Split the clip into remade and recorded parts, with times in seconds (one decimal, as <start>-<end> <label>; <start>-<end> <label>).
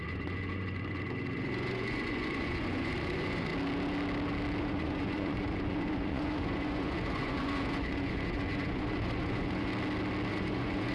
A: 0.0-3.5 remade; 3.5-4.6 recorded; 4.6-9.7 remade; 9.7-10.3 recorded; 10.3-10.9 remade